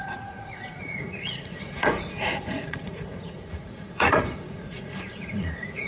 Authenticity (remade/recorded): remade